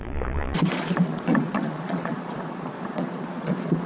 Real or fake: fake